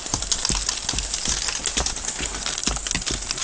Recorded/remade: recorded